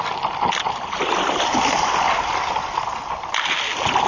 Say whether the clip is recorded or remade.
recorded